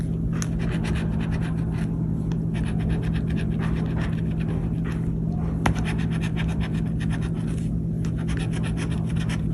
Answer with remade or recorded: recorded